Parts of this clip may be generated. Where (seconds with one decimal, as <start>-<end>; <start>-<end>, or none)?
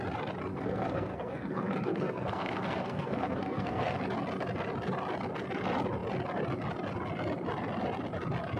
0.5-4.0